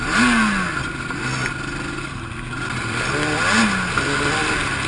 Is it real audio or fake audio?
real